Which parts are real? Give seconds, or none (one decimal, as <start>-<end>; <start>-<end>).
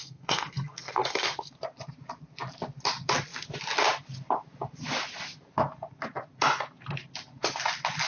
1.5-8.1